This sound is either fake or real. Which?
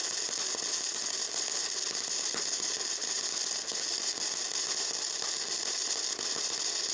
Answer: real